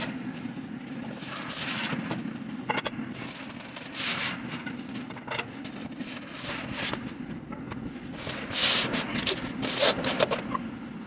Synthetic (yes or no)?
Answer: no